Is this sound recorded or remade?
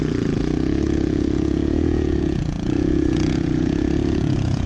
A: remade